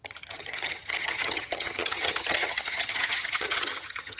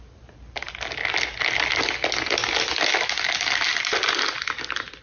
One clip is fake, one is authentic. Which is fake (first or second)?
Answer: first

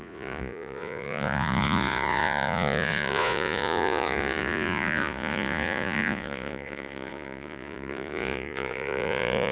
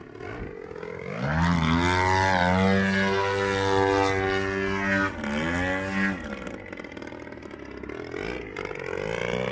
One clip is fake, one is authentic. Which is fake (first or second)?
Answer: first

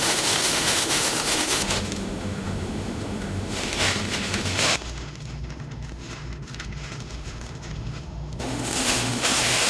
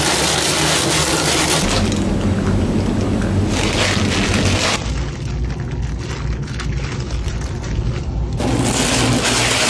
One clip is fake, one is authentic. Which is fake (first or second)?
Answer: first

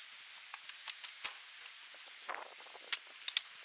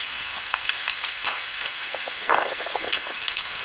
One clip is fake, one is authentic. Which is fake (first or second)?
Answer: second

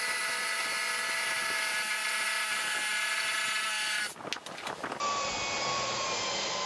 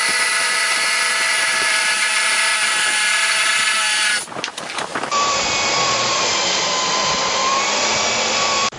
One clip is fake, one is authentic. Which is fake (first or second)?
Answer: second